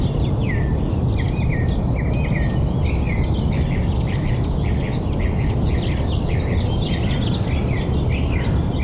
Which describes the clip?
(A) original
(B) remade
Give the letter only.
A